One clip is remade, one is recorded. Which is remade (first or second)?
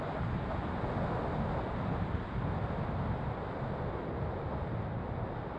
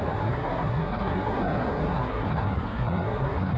second